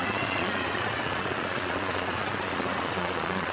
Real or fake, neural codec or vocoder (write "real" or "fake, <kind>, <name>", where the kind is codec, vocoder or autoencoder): fake, vocoder, Vocos